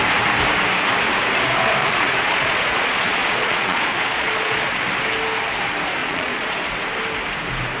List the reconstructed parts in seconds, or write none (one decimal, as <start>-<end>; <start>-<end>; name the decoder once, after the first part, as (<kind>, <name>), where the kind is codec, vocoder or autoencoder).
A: 1.8-4.8 (vocoder, Vocos); 6.0-6.6